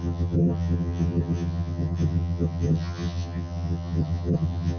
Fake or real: fake